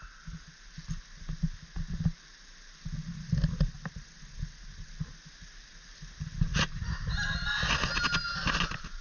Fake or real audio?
real